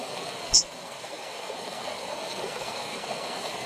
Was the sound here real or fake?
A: fake